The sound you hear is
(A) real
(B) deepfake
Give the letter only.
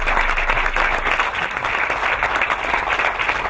A